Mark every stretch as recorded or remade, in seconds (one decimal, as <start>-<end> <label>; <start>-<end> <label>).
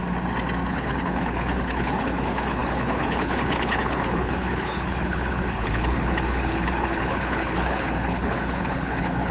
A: 0.0-0.7 recorded; 0.7-9.3 remade